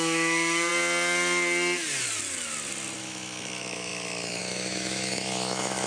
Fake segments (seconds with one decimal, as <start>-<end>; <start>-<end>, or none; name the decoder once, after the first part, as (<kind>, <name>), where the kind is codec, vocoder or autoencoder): 0.0-0.7 (autoencoder, DAC-VAE); 3.0-5.9

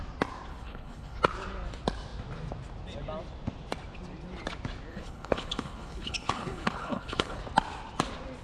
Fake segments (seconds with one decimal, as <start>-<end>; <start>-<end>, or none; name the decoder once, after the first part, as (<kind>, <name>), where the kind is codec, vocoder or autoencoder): 0.5-1.2 (codec, HILCodec); 4.9-7.4